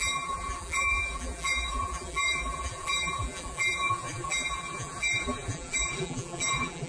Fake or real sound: fake